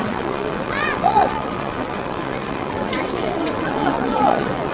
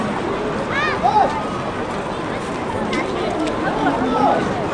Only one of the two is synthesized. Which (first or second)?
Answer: first